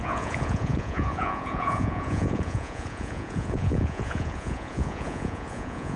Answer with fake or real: fake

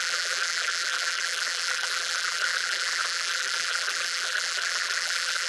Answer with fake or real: fake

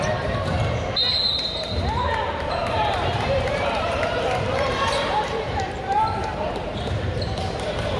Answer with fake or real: fake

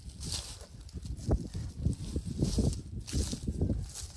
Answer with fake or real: real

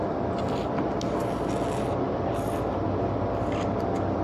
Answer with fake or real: real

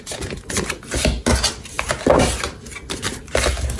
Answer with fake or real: real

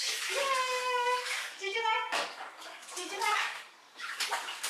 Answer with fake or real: fake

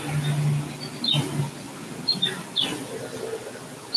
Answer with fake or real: real